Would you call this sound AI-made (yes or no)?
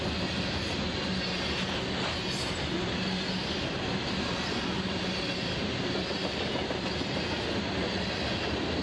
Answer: no